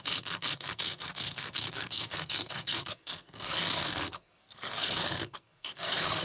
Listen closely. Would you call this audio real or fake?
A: fake